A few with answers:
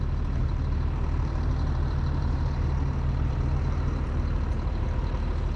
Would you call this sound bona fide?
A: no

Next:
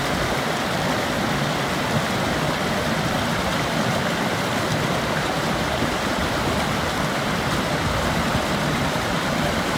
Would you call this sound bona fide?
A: no